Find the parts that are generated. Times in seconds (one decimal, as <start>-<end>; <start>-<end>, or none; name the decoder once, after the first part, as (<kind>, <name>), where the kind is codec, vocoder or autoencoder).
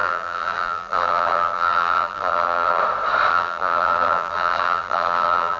0.0-2.8 (vocoder, BigVGAN v2); 3.3-5.6